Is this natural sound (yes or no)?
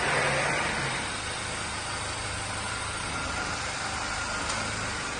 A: yes